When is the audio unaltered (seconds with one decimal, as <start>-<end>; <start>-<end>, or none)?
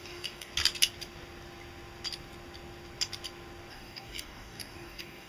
0.5-3.7